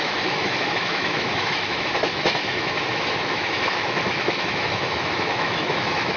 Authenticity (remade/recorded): remade